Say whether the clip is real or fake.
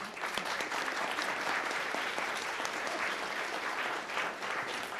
fake